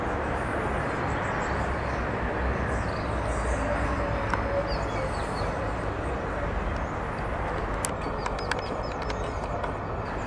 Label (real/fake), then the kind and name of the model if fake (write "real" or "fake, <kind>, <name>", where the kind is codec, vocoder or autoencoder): real